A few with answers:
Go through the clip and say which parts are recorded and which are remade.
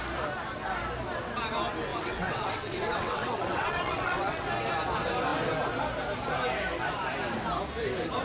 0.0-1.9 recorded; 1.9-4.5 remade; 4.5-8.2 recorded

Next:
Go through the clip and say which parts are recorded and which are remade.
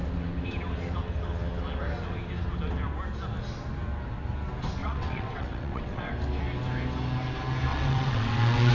0.0-4.8 recorded; 4.8-6.1 remade; 6.1-7.7 recorded; 7.7-8.7 remade